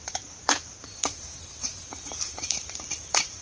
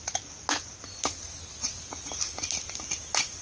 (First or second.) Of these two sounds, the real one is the second